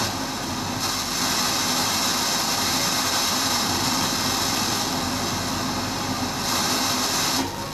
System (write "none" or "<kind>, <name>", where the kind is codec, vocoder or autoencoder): none